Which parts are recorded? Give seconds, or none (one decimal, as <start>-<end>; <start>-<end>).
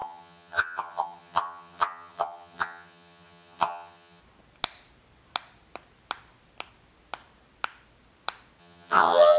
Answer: 4.2-8.6